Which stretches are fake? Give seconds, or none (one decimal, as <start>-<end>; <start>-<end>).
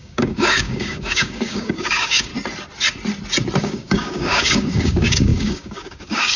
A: 0.0-2.3; 3.6-6.4